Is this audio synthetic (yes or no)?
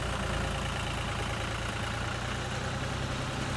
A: no